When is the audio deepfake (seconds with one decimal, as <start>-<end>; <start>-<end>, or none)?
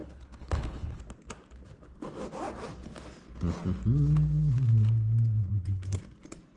0.0-1.0; 5.5-6.0